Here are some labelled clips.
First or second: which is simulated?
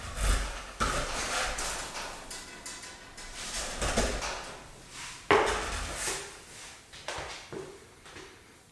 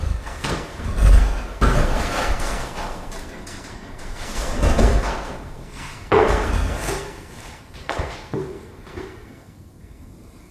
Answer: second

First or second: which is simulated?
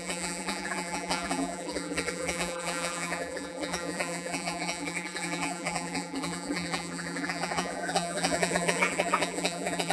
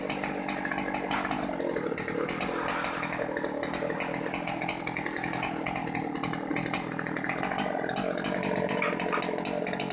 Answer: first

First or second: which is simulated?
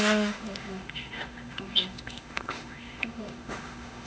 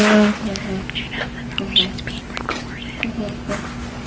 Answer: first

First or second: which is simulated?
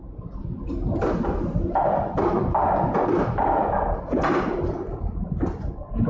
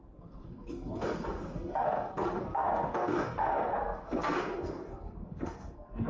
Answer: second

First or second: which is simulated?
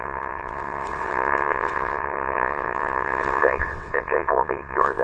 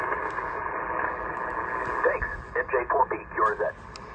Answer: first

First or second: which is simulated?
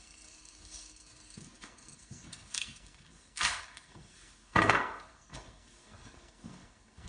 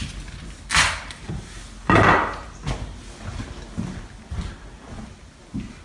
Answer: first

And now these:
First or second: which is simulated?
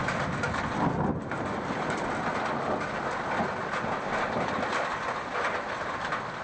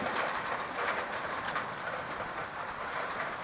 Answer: second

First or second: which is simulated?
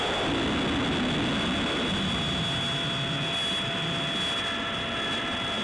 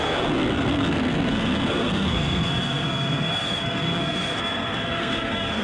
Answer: second